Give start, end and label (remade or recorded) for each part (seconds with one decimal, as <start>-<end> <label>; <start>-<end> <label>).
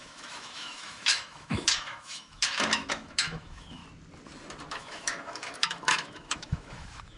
0.0-3.8 remade; 3.8-4.7 recorded; 4.7-7.2 remade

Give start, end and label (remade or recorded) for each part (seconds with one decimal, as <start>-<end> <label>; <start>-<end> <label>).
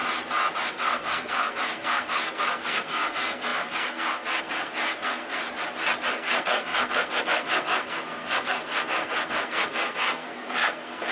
0.0-0.7 recorded; 0.7-5.4 remade; 5.4-6.1 recorded; 6.1-11.1 remade